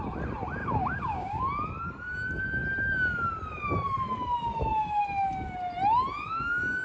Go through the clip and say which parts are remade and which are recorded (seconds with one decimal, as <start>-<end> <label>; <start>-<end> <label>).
0.0-0.6 recorded; 0.6-1.4 remade; 1.4-6.8 recorded